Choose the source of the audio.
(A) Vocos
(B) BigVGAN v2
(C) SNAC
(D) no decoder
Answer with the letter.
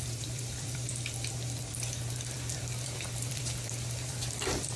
B